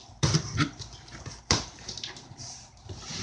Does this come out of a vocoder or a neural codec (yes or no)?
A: yes